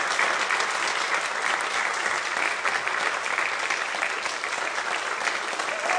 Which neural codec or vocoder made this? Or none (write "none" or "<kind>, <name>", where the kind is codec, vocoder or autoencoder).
none